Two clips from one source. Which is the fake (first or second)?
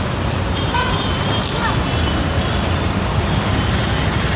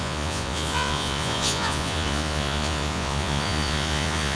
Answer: second